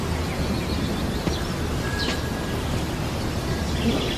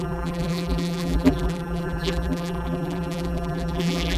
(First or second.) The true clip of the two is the first